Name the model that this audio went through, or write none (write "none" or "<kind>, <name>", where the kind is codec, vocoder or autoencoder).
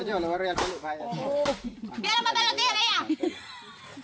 none